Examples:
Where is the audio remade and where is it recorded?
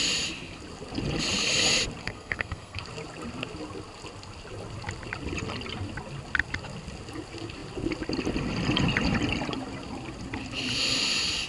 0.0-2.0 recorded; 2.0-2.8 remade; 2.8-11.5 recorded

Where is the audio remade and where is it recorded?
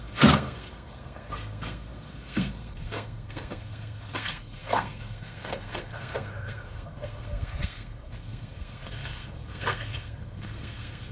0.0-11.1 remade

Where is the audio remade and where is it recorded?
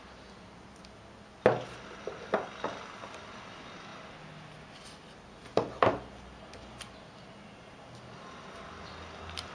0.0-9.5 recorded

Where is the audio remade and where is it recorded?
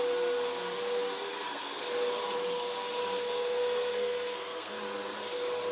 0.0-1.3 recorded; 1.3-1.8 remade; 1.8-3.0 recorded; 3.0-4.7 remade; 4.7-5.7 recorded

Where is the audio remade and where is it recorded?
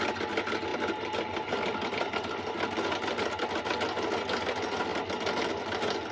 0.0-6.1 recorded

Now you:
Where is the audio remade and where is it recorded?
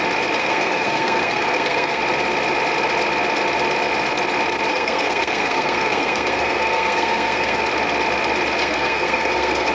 0.0-0.4 recorded; 0.4-2.0 remade; 2.0-4.7 recorded; 4.7-7.6 remade; 7.6-8.6 recorded; 8.6-9.7 remade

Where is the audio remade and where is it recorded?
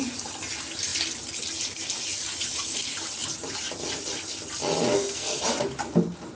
0.0-4.9 recorded; 4.9-5.4 remade; 5.4-6.4 recorded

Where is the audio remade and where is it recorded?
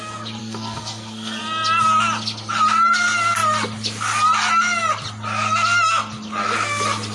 0.0-0.4 recorded; 0.4-1.4 remade; 1.4-7.1 recorded